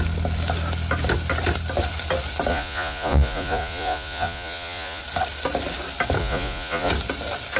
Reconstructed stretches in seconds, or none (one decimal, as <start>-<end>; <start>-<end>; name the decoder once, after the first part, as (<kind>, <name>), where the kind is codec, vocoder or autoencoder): 2.5-5.0 (vocoder, Vocos); 6.2-6.9